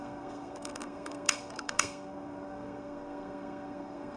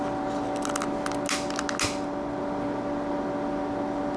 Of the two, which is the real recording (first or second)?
second